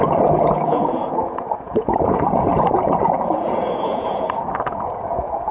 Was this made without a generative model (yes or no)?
no